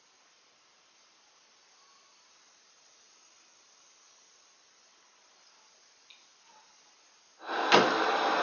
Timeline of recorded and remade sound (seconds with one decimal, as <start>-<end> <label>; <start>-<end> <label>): 0.0-8.4 recorded